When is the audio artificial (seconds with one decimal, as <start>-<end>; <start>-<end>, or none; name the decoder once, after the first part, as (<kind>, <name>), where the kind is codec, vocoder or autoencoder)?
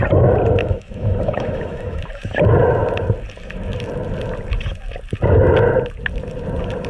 0.6-2.0 (autoencoder, DAC-VAE)